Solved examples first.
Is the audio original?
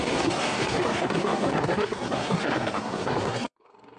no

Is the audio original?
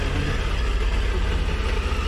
yes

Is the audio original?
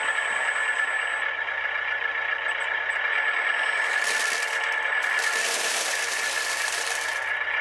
yes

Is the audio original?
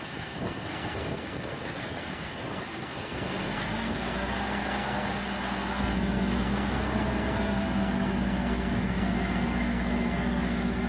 no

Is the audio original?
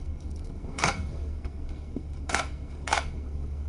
no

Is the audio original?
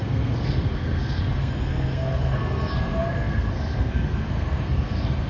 no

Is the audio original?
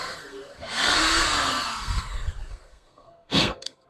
no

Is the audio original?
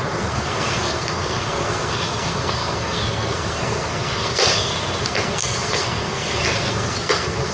no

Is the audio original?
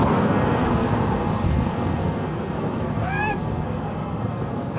no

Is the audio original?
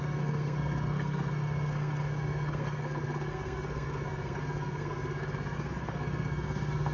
no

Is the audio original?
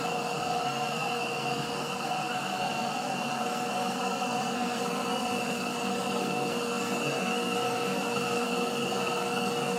no